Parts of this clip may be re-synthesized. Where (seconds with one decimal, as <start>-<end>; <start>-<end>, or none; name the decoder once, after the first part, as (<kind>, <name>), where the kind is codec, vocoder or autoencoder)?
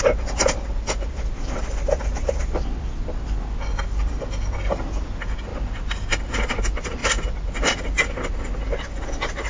none